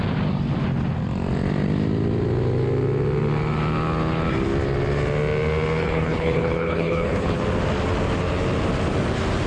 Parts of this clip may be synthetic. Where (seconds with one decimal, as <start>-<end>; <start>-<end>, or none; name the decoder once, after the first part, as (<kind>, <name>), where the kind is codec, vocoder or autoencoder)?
5.8-7.4 (codec, HILCodec)